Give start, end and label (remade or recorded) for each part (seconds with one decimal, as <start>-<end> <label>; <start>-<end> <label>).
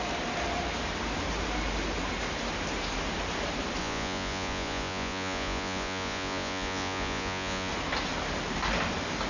0.0-3.8 recorded; 3.8-7.7 remade; 7.7-9.3 recorded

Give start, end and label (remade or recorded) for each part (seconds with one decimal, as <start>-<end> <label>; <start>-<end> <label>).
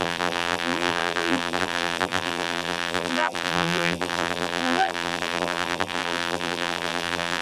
0.0-7.4 remade